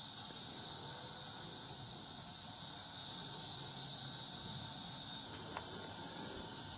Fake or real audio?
real